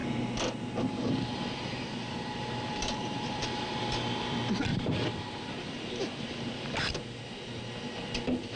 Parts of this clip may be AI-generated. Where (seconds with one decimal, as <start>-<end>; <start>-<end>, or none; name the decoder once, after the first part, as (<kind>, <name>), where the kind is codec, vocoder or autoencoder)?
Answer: 0.0-4.1 (vocoder, BigVGAN v2); 4.7-7.2